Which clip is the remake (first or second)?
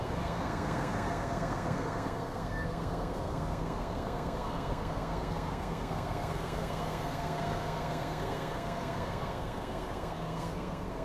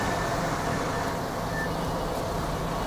first